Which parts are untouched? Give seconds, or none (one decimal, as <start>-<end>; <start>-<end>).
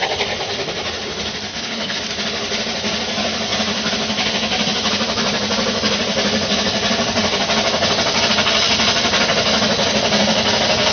0.0-1.5; 2.0-10.9